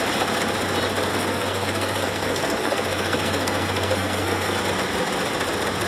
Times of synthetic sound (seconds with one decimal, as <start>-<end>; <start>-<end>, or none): 1.1-4.6